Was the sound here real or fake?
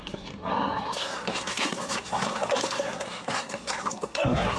fake